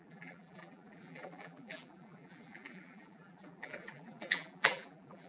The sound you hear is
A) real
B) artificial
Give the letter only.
B